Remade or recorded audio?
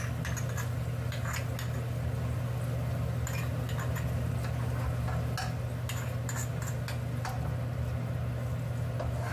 recorded